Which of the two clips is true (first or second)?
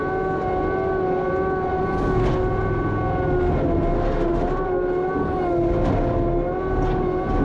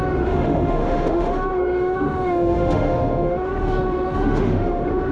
first